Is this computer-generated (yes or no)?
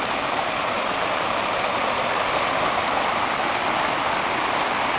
no